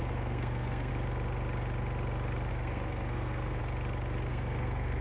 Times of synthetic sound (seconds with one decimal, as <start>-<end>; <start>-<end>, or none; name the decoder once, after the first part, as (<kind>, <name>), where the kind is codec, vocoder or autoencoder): 0.0-0.9 (codec, SNAC); 2.5-3.6; 4.3-5.0